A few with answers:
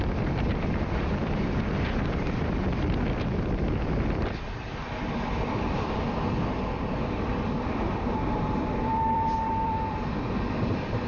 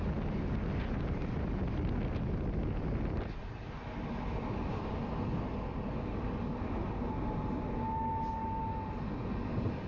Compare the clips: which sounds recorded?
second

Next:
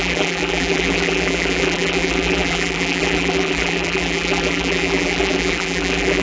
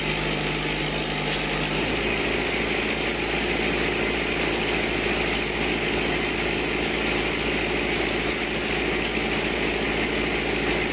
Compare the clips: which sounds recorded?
second